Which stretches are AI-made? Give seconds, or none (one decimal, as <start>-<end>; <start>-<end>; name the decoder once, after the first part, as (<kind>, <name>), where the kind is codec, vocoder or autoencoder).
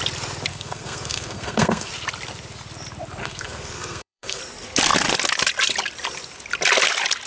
0.5-1.9 (codec, SNAC); 3.2-4.4